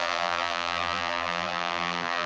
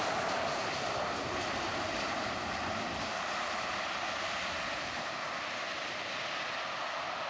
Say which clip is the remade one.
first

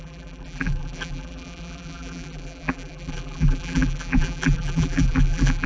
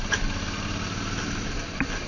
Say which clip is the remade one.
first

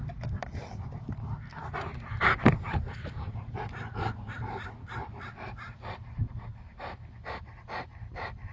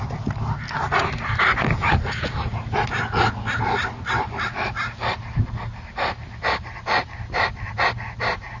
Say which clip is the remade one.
first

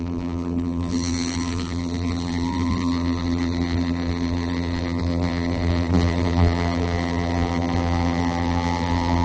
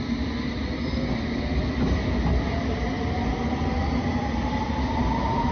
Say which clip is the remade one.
first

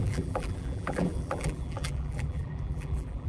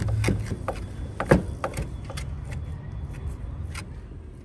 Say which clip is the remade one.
first